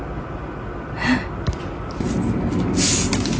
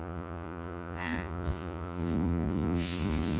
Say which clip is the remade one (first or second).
second